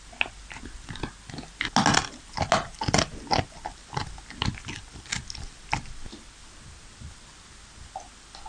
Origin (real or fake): real